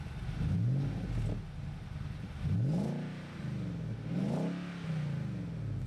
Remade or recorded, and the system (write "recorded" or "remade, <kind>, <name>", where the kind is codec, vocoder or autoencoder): recorded